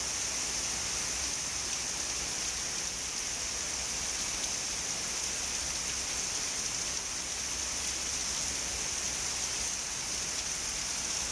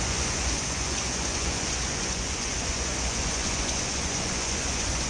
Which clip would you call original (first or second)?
first